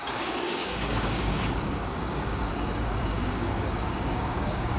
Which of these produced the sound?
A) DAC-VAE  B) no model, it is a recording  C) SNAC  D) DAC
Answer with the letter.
D